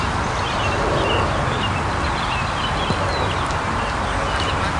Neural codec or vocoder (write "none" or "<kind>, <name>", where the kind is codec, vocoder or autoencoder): none